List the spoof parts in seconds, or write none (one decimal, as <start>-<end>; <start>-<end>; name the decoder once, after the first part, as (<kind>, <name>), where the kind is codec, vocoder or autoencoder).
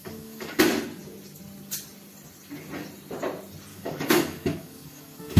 0.0-0.6 (codec, DAC); 3.7-5.4